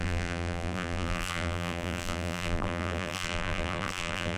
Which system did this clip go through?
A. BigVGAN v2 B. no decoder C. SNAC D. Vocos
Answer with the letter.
A